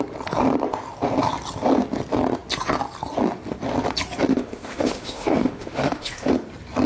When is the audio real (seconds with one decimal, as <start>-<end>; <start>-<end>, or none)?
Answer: 0.0-4.3; 6.3-6.9